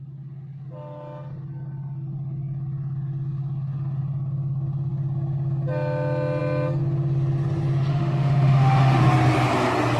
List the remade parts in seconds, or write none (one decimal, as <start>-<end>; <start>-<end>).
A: 7.9-9.0